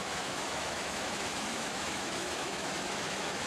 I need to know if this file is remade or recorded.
remade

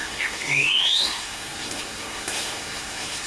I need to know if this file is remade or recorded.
remade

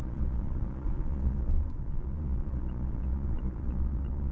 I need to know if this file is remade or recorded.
remade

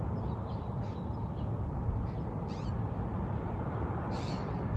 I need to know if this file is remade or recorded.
recorded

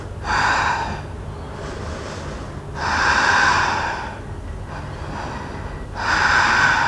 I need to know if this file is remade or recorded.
recorded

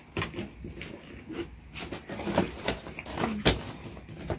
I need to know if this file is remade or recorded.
recorded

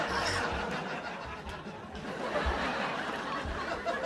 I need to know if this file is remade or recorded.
recorded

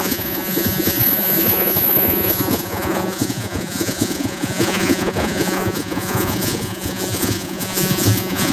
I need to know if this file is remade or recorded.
remade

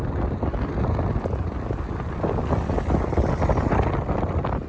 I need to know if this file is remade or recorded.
recorded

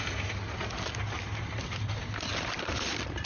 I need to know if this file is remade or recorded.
remade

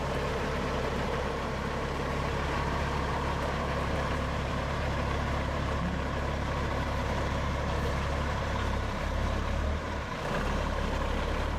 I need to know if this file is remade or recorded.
remade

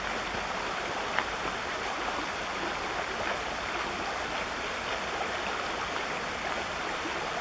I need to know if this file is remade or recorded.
recorded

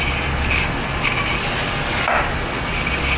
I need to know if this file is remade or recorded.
recorded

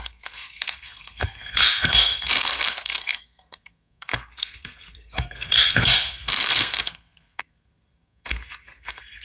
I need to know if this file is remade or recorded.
remade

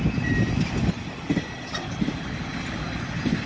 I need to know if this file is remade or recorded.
recorded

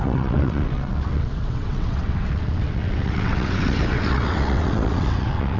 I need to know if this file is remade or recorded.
remade